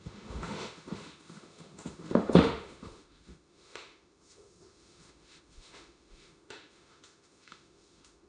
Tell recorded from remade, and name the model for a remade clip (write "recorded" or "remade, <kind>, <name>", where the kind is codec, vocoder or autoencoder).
remade, autoencoder, DAC-VAE